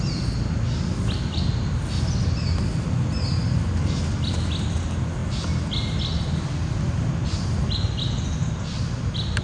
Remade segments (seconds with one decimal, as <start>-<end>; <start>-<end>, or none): none